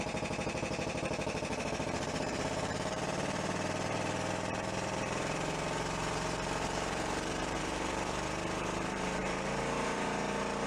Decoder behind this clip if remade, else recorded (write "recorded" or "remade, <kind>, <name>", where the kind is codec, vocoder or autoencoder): remade, vocoder, BigVGAN v2